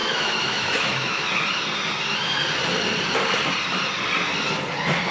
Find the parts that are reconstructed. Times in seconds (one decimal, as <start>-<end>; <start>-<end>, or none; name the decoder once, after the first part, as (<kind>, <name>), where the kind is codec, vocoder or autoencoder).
0.0-1.3 (autoencoder, DAC-VAE)